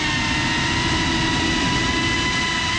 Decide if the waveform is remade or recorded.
recorded